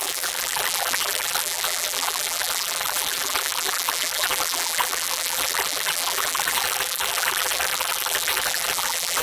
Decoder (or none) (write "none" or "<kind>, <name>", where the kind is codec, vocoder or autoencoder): vocoder, BigVGAN v2